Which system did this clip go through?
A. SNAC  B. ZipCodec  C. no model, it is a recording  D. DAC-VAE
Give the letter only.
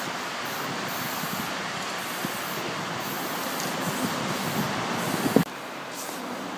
C